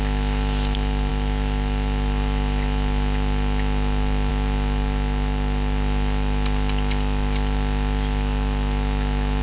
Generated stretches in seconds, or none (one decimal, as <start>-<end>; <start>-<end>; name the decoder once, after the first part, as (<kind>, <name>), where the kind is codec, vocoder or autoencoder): none